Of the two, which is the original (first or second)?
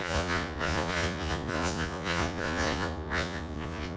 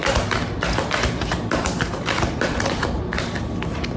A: second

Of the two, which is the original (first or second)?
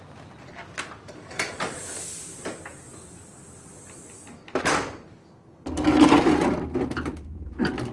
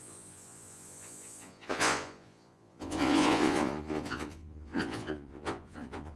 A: first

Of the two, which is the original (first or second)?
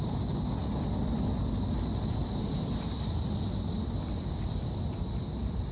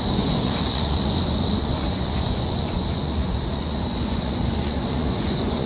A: first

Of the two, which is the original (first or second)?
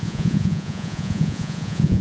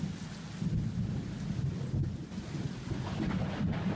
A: second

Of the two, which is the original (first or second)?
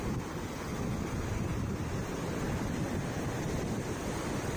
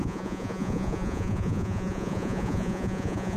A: first